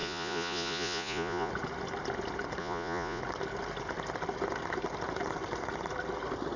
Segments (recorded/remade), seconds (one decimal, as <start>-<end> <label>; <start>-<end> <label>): 0.0-1.5 remade; 1.5-2.6 recorded; 2.6-3.2 remade; 3.2-6.6 recorded